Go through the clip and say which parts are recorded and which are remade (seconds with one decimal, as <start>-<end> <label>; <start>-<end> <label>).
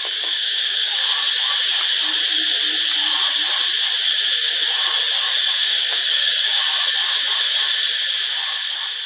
0.0-1.0 remade; 1.0-5.5 recorded; 5.5-6.6 remade; 6.6-9.1 recorded